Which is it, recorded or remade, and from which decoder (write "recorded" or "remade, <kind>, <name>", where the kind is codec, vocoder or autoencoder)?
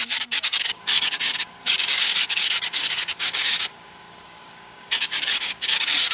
remade, codec, DAC